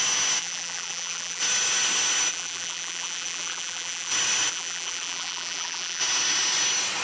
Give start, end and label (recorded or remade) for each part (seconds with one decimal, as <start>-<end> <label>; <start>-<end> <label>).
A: 0.0-0.4 recorded; 0.4-1.4 remade; 1.4-2.3 recorded; 2.3-4.1 remade; 4.1-4.5 recorded; 4.5-6.0 remade; 6.0-7.0 recorded